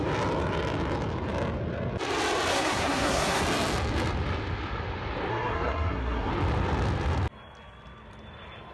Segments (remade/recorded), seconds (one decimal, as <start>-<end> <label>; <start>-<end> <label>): 0.0-2.5 recorded; 2.5-3.4 remade; 3.4-5.3 recorded; 5.3-6.3 remade; 6.3-8.7 recorded